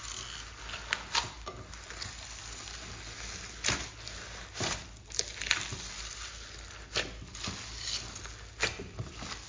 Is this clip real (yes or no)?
yes